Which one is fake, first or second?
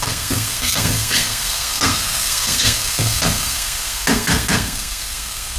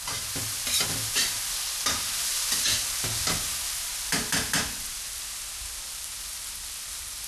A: first